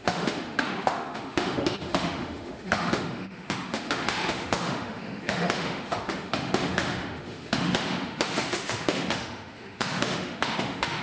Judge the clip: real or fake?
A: fake